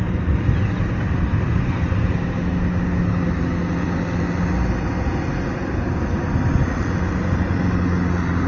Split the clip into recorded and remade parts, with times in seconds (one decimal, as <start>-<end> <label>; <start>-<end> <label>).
0.0-8.5 recorded